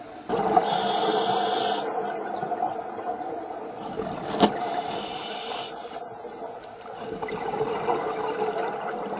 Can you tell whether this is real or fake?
real